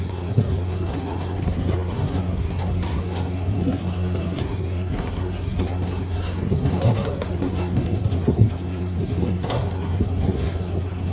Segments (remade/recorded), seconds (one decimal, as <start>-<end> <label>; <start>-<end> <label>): 0.0-11.1 remade